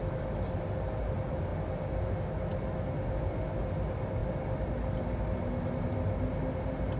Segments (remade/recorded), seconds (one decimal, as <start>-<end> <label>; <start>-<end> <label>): 0.0-7.0 recorded